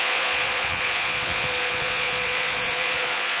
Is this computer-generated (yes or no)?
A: yes